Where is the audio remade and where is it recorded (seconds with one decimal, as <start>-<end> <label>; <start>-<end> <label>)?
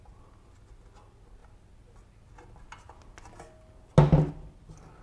0.0-5.0 recorded